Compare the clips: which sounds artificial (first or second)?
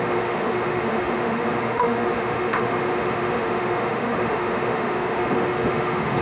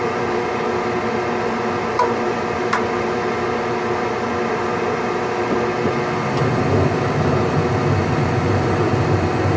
first